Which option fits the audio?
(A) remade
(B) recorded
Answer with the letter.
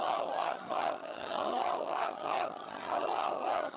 A